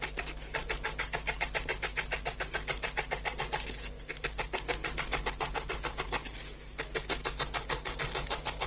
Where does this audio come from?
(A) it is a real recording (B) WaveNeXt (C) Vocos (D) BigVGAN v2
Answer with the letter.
A